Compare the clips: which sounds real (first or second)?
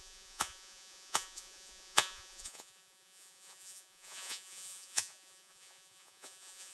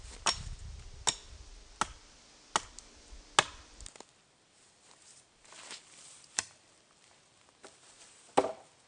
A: second